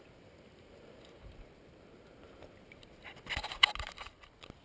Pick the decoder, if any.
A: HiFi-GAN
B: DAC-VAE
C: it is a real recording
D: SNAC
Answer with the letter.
C